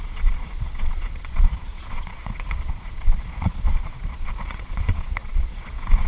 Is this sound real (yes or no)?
no